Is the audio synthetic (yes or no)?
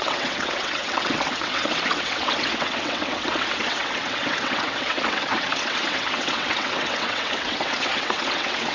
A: yes